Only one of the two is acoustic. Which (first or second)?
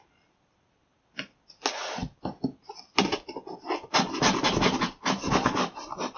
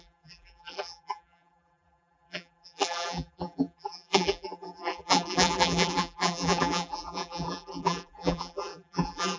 first